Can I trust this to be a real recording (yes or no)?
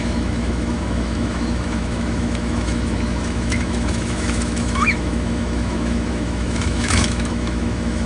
no